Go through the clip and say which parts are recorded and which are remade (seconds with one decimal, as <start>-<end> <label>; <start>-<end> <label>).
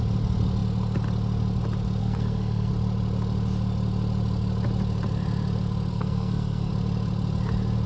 0.0-2.0 recorded; 2.0-2.7 remade; 2.7-5.9 recorded; 5.9-6.7 remade; 6.7-7.9 recorded